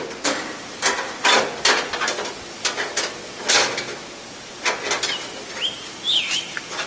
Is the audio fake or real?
real